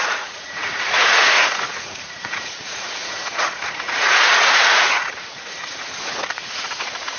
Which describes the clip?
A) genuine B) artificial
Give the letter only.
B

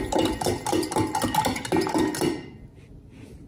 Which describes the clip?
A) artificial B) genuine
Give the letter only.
B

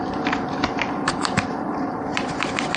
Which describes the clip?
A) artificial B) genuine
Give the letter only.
A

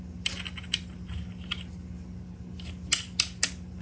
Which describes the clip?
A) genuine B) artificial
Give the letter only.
A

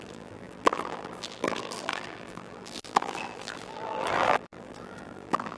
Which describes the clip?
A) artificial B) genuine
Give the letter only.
A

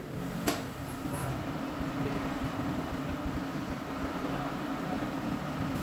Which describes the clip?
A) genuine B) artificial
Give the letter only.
A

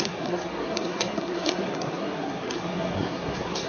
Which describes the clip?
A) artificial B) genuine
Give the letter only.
A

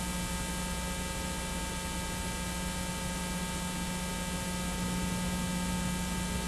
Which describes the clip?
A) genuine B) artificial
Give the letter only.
A